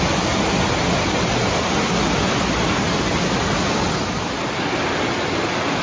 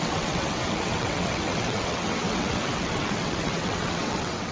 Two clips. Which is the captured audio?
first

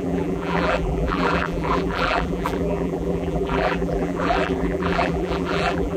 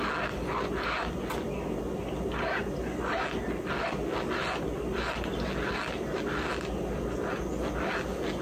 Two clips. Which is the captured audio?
second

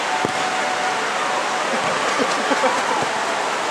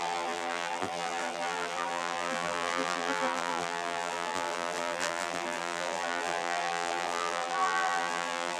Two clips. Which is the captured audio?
first